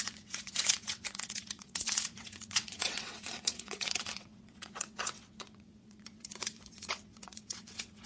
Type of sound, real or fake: fake